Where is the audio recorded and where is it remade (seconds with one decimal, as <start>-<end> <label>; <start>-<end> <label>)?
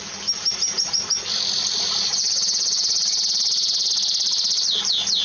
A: 0.0-5.2 recorded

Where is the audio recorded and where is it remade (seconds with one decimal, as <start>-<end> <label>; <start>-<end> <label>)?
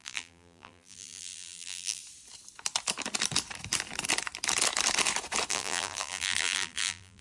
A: 0.0-2.0 remade; 2.0-5.5 recorded; 5.5-7.2 remade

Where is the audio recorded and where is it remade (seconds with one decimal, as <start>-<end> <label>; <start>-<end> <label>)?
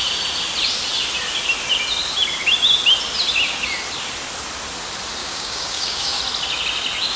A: 0.0-5.2 recorded; 5.2-6.2 remade; 6.2-7.2 recorded